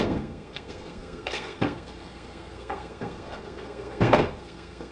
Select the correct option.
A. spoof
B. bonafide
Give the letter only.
A